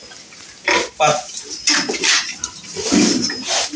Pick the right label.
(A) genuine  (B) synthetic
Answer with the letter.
A